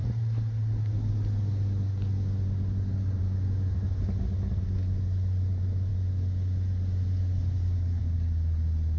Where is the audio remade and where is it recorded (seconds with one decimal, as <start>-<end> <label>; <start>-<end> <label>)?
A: 0.0-9.0 recorded